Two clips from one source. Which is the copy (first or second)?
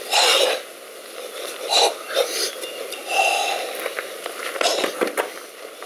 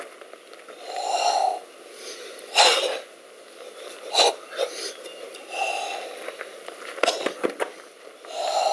first